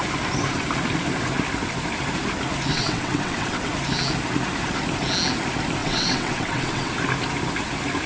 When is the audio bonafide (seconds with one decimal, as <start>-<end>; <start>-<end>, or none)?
0.0-2.7; 3.7-5.8; 6.9-8.1

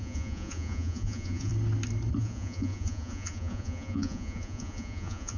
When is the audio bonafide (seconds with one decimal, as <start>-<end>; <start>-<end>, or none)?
1.5-2.2

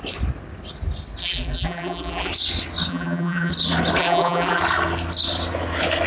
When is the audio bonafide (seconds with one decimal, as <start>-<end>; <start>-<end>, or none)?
0.0-1.2; 2.3-2.9; 3.5-4.0; 4.6-6.1